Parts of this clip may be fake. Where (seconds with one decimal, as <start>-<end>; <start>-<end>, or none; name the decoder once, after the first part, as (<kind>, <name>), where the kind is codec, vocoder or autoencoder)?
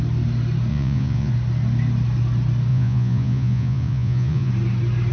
0.7-1.3 (vocoder, Vocos); 2.7-4.5